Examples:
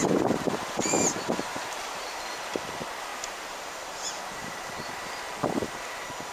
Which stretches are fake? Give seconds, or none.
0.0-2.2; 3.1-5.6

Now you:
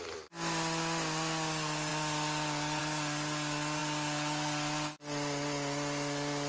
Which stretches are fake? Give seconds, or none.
none

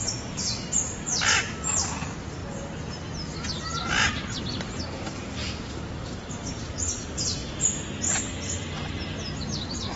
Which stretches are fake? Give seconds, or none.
0.0-1.1; 1.6-2.4; 4.4-7.4; 8.9-10.0